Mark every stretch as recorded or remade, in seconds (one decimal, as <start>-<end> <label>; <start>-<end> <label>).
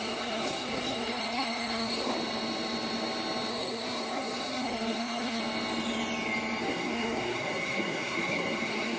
0.0-2.1 remade; 2.1-3.5 recorded; 3.5-5.4 remade; 5.4-6.6 recorded; 6.6-9.0 remade